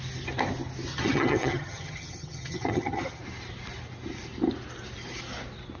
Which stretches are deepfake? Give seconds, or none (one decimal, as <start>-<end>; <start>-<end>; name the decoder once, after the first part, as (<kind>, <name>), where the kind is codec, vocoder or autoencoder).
0.9-3.2 (vocoder, HiFi-GAN)